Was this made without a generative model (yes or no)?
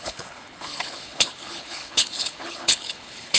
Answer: no